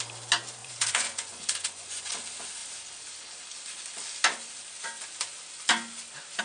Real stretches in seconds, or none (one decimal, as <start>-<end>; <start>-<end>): 0.0-0.6; 2.1-6.4